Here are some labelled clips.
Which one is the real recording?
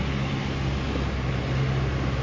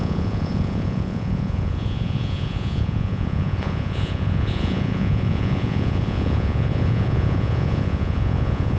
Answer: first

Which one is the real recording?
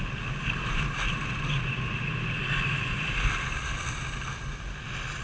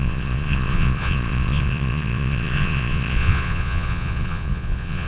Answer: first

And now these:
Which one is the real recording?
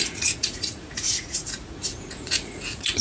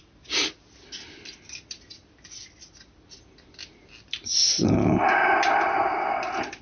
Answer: second